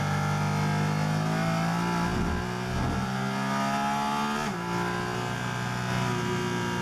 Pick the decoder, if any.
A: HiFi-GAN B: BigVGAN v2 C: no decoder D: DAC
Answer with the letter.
C